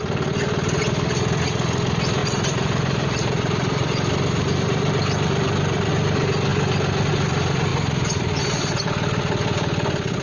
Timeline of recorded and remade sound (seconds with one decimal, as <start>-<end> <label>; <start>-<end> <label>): 0.0-2.2 recorded; 2.2-5.9 remade; 5.9-7.7 recorded; 7.7-9.2 remade; 9.2-10.2 recorded

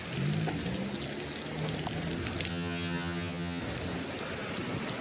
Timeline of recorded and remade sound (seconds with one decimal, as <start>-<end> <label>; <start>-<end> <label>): 0.0-2.5 recorded; 2.5-3.6 remade; 3.6-5.0 recorded

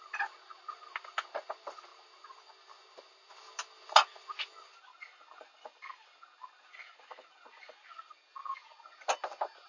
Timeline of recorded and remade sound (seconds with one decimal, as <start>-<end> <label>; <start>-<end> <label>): 0.0-9.7 recorded